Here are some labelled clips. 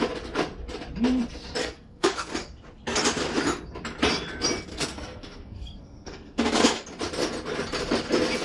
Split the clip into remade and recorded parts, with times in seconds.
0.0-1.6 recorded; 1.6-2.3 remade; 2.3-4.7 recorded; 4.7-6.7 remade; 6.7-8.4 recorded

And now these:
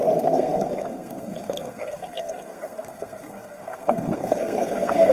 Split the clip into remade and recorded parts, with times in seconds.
0.0-5.1 remade

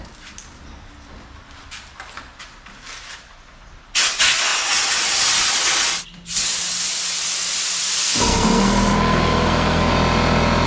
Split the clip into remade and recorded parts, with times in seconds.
0.0-8.0 recorded; 8.0-9.9 remade; 9.9-10.7 recorded